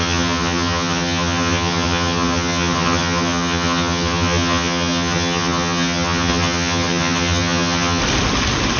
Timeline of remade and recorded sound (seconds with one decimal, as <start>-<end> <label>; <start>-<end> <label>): 0.0-8.0 remade; 8.0-8.8 recorded

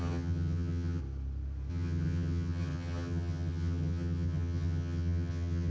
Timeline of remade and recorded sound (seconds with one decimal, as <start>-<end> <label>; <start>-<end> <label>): 0.0-1.0 remade; 1.0-1.7 recorded; 1.7-5.7 remade

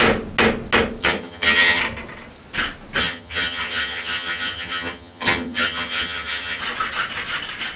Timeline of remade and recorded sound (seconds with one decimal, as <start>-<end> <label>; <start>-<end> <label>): 0.0-1.0 recorded; 1.0-1.8 remade; 1.8-3.0 recorded; 3.0-6.6 remade; 6.6-7.8 recorded

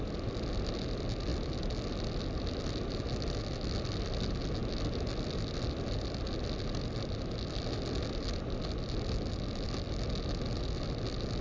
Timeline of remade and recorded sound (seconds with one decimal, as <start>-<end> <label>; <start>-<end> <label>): 0.0-11.4 recorded

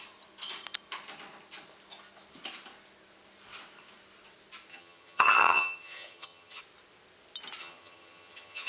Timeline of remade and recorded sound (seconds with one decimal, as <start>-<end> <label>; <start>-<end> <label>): 0.0-4.7 recorded; 4.7-6.6 remade; 6.6-7.6 recorded; 7.6-8.7 remade

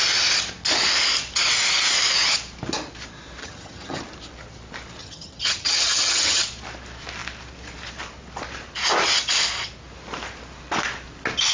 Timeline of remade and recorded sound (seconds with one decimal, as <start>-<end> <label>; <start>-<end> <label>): 0.0-3.4 recorded; 3.4-4.0 remade; 4.0-5.0 recorded; 5.0-6.4 remade; 6.4-11.5 recorded